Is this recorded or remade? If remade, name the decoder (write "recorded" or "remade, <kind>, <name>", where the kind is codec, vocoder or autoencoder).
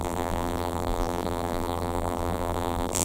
remade, vocoder, BigVGAN v2